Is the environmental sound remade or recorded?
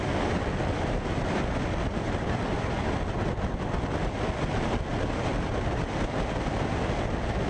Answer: recorded